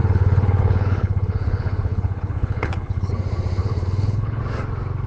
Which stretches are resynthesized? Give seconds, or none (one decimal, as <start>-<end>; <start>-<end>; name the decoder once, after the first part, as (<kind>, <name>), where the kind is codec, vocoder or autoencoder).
0.0-3.1 (codec, HILCodec); 3.6-4.4

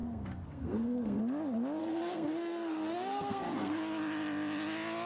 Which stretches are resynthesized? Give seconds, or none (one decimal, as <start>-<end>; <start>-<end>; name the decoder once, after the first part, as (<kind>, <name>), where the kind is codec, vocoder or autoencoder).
0.0-1.2 (codec, SNAC); 1.8-3.8